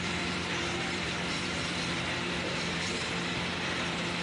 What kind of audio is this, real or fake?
fake